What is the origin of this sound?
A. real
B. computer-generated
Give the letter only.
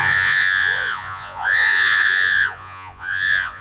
B